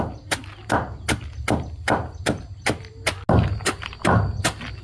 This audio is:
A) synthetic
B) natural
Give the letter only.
B